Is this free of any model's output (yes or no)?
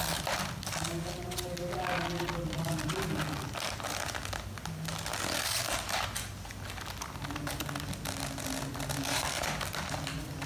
yes